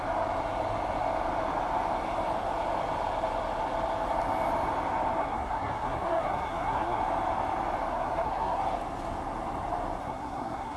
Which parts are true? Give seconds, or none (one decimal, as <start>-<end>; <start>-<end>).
0.0-5.2; 7.0-7.9; 8.6-10.0